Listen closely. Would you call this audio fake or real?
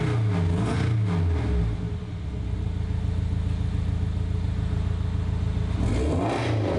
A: real